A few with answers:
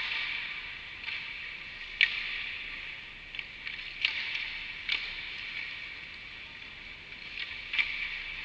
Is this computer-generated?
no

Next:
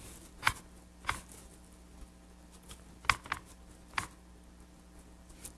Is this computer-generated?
no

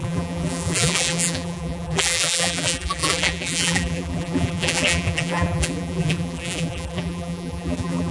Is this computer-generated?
yes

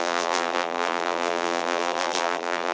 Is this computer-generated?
yes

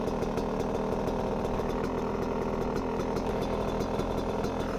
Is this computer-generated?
no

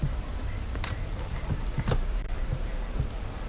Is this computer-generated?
yes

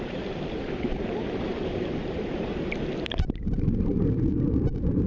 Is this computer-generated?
yes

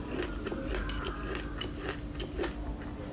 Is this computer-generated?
no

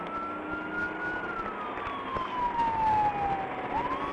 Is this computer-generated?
no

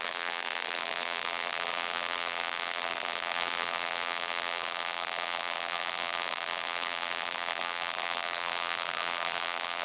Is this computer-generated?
yes